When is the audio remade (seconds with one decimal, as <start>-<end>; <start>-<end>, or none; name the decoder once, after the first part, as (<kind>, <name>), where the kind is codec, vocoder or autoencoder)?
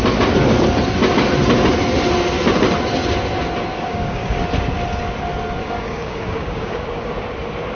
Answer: 3.9-4.4 (codec, DAC); 5.6-7.1